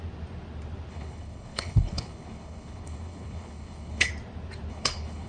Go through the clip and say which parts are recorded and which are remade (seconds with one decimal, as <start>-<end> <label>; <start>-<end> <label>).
0.0-0.9 recorded; 0.9-4.1 remade; 4.1-4.7 recorded; 4.7-5.3 remade